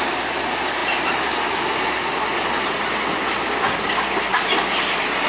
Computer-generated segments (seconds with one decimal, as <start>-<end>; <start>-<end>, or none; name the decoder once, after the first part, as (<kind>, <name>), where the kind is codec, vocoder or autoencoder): none